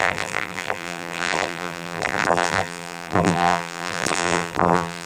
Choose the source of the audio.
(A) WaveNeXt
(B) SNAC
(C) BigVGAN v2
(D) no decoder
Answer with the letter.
C